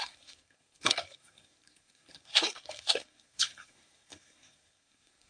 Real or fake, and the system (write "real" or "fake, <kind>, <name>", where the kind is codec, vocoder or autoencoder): fake, codec, SNAC